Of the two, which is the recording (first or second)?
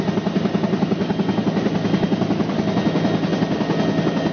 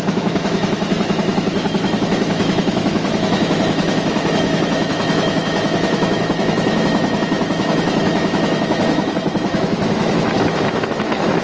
first